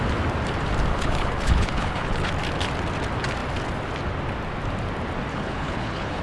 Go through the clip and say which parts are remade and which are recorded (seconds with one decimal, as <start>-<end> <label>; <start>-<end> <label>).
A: 0.0-0.9 recorded; 0.9-2.3 remade; 2.3-5.3 recorded; 5.3-6.2 remade